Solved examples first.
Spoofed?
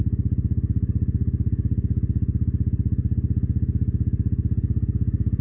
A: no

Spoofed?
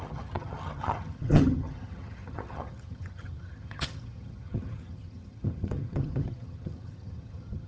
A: yes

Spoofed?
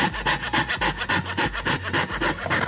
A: no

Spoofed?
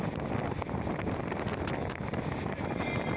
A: no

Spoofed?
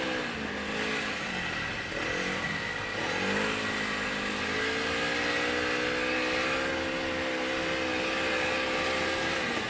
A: no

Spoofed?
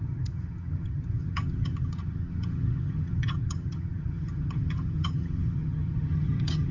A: yes